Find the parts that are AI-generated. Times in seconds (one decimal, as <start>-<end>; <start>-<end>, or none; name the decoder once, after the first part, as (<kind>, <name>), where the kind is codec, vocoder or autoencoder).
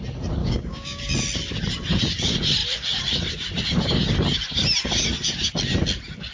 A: 0.4-1.0 (codec, DAC)